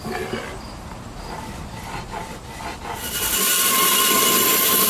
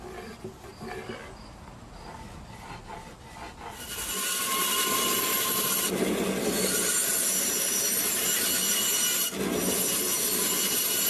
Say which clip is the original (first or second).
second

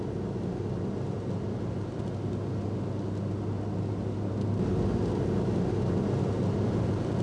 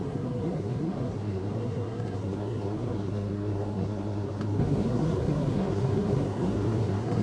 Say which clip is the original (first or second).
first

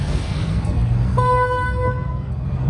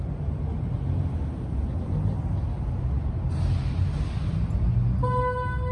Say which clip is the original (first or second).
second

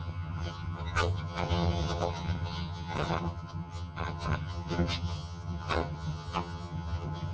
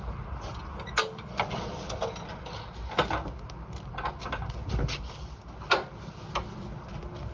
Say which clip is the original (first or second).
second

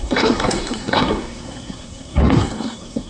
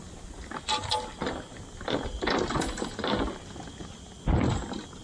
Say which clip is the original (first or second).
second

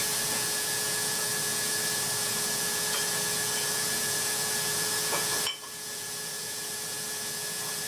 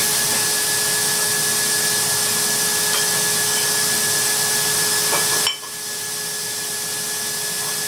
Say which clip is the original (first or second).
second